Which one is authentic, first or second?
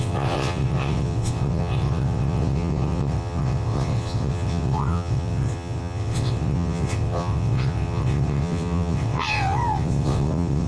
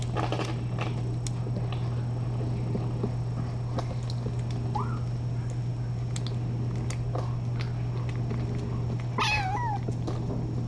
second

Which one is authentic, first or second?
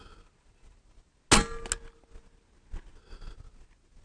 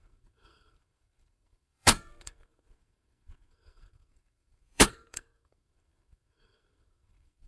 first